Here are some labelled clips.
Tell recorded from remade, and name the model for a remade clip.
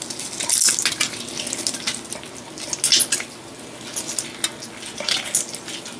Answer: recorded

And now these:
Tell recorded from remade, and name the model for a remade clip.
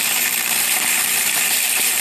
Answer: remade, vocoder, BigVGAN v2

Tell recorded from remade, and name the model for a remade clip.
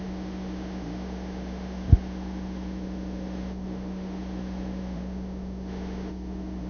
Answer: remade, autoencoder, DAC-VAE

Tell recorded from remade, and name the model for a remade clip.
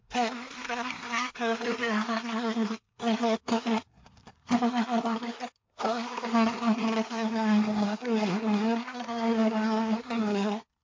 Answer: remade, codec, SNAC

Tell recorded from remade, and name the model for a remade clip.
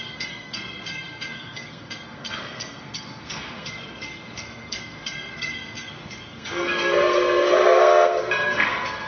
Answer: remade, codec, SNAC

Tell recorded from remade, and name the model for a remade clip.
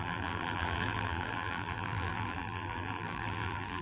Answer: remade, vocoder, BigVGAN v2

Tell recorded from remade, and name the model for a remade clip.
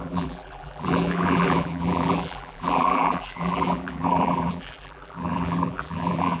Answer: remade, vocoder, BigVGAN v2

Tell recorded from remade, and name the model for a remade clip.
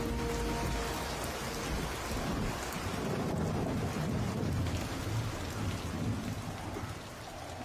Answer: recorded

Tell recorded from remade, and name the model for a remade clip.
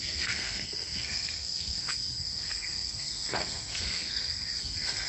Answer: remade, codec, SNAC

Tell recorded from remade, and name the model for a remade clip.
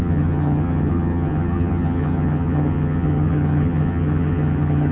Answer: remade, vocoder, HiFi-GAN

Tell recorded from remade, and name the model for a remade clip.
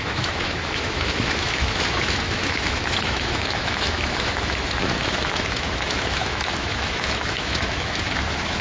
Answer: remade, autoencoder, DAC-VAE